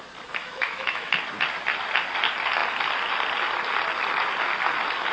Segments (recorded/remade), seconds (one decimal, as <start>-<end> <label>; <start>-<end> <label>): 0.0-0.4 recorded; 0.4-1.1 remade; 1.1-5.1 recorded